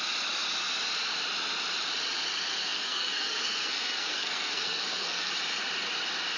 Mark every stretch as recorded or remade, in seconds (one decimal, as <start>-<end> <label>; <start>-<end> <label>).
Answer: 0.0-2.5 recorded; 2.5-5.3 remade; 5.3-6.4 recorded